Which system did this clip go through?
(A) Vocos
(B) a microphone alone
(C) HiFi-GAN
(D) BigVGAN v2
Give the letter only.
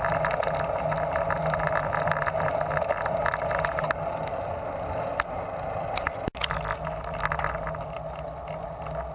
B